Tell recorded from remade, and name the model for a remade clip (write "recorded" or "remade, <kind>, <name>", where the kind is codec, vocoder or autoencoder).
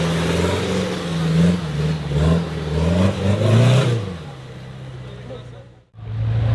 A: recorded